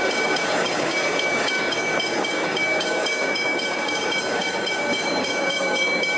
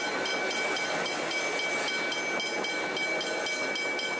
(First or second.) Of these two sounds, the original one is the second